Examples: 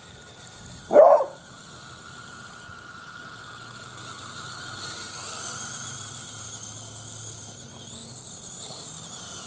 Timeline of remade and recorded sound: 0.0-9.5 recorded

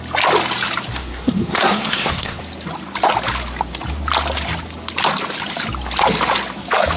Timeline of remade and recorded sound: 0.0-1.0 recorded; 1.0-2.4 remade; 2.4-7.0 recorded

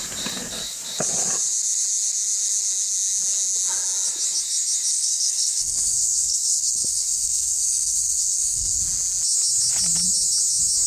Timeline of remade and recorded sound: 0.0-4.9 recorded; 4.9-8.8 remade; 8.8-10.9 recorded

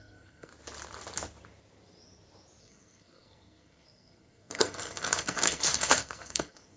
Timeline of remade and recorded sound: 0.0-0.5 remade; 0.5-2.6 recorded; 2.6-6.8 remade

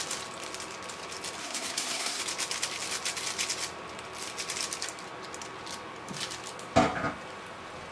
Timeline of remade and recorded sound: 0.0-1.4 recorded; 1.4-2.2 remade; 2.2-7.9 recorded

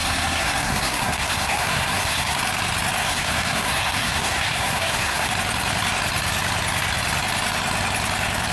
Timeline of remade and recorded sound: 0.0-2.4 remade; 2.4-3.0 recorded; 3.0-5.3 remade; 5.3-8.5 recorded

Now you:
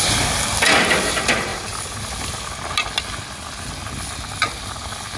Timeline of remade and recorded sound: 0.0-5.2 recorded

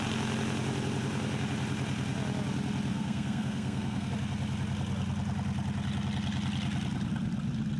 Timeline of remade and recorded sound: 0.0-2.9 recorded; 2.9-4.1 remade; 4.1-7.8 recorded